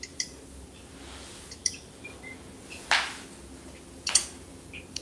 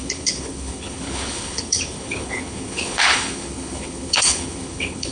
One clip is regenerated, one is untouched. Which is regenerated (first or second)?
second